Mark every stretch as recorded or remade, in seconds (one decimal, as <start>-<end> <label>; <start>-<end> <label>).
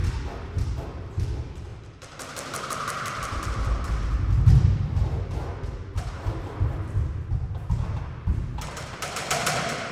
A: 0.0-8.3 recorded; 8.3-9.9 remade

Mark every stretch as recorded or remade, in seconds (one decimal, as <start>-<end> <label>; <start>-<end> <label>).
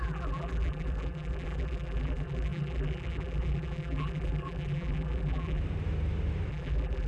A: 0.0-5.6 remade; 5.6-6.5 recorded; 6.5-7.1 remade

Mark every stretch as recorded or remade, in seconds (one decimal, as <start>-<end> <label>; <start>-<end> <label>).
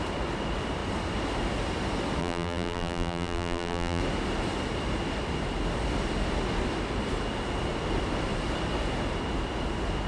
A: 0.0-2.2 recorded; 2.2-4.0 remade; 4.0-10.1 recorded